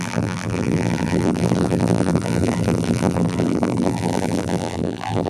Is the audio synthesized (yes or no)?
yes